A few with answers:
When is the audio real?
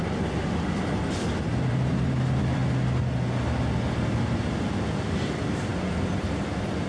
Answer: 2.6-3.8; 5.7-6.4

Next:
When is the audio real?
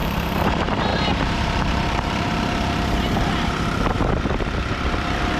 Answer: 0.5-0.9; 4.1-5.4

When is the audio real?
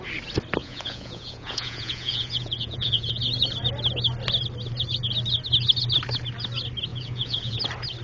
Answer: 0.0-0.6; 3.2-6.9; 7.6-8.0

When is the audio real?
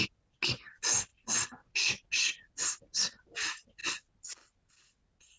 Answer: 0.0-5.4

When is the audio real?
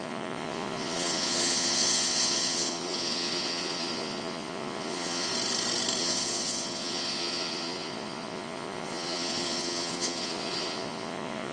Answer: 5.3-6.0